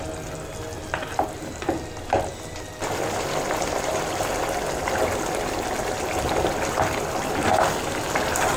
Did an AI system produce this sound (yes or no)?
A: no